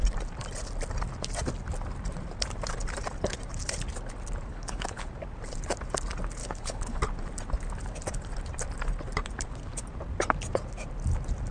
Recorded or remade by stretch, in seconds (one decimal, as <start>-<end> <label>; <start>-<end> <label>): 0.0-4.5 recorded; 4.5-5.1 remade; 5.1-6.4 recorded; 6.4-7.0 remade; 7.0-11.5 recorded